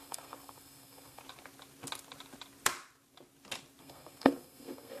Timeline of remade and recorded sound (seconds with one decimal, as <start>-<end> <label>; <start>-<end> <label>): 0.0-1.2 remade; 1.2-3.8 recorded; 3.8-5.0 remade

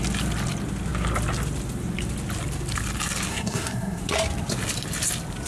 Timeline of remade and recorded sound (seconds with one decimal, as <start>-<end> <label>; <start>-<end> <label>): 0.0-3.3 recorded; 3.3-4.0 remade; 4.0-5.5 recorded

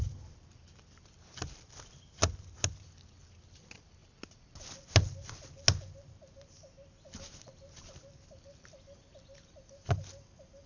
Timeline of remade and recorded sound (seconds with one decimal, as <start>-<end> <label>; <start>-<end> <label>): 0.0-10.7 recorded

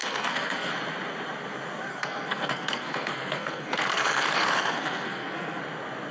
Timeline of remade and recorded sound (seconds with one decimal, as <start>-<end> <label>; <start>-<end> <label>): 0.0-0.7 remade; 0.7-1.9 recorded; 1.9-5.6 remade; 5.6-6.1 recorded

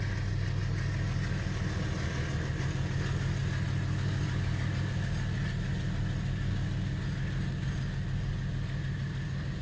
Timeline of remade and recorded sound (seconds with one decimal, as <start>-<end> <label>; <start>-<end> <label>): 0.0-9.6 recorded